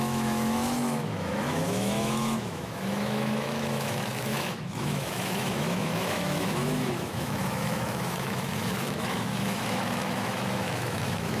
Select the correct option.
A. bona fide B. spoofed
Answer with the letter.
B